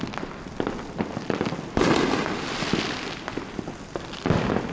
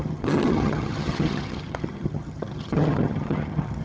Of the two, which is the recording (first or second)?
first